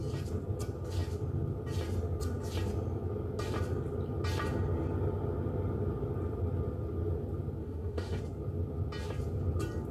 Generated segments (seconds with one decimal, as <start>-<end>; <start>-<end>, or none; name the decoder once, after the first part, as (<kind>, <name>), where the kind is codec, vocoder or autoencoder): 7.6-8.2 (autoencoder, DAC-VAE)